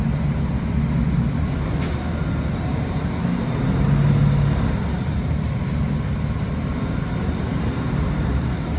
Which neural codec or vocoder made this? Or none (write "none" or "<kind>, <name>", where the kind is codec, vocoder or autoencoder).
none